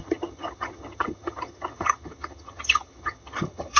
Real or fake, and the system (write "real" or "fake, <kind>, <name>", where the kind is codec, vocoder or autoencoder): fake, vocoder, HiFi-GAN